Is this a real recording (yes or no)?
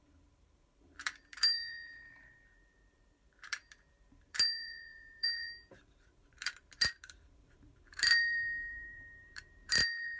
no